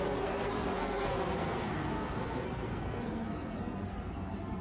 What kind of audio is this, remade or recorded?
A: remade